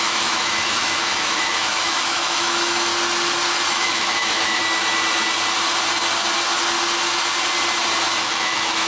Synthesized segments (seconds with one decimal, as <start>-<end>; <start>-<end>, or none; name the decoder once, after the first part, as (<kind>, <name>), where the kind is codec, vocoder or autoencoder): 0.0-2.9 (autoencoder, DAC-VAE); 3.7-4.6; 8.2-8.9